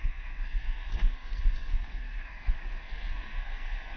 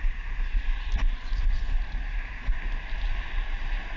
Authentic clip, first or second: second